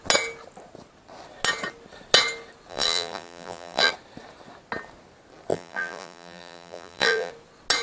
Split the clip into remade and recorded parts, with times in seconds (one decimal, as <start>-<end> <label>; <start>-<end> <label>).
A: 0.0-2.7 recorded; 2.7-3.9 remade; 3.9-5.5 recorded; 5.5-7.3 remade; 7.3-7.8 recorded